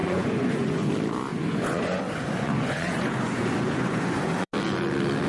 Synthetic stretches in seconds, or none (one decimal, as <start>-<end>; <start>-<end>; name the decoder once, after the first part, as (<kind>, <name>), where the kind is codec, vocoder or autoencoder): 0.0-0.9 (vocoder, Vocos); 1.3-4.5